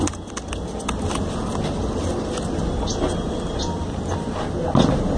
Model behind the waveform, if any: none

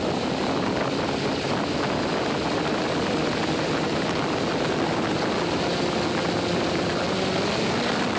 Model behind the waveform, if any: none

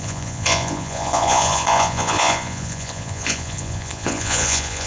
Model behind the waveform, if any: vocoder, Vocos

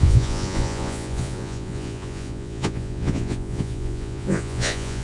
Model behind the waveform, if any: vocoder, Vocos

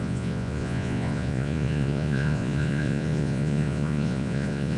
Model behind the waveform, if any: vocoder, Vocos